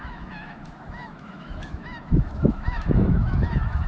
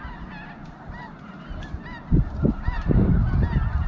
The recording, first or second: second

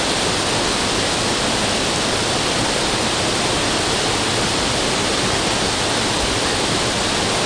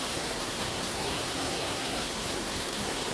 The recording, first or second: first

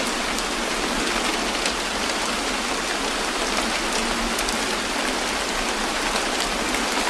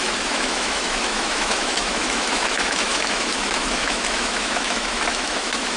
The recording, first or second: first